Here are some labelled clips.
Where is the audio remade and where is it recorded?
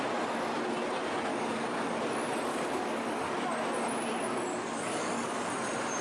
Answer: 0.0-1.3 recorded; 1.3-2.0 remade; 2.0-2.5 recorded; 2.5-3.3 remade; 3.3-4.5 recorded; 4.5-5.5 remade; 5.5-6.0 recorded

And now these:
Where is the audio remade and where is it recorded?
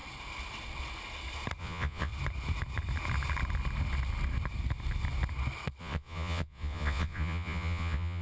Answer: 0.0-1.6 recorded; 1.6-2.1 remade; 2.1-5.8 recorded; 5.8-8.2 remade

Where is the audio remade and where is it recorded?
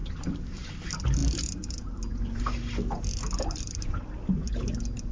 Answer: 0.0-0.7 remade; 0.7-5.1 recorded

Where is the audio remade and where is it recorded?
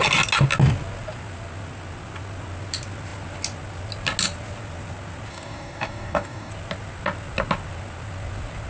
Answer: 0.0-5.3 recorded; 5.3-6.5 remade; 6.5-8.7 recorded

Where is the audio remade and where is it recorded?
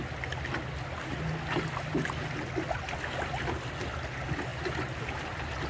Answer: 0.0-5.7 recorded